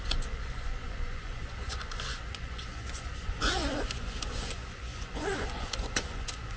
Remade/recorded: remade